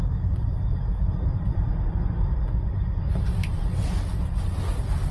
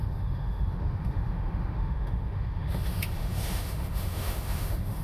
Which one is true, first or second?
first